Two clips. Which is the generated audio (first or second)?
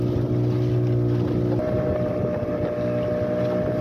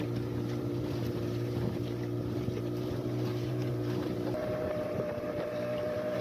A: second